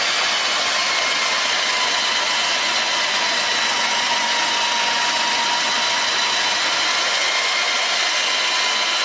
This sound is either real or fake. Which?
fake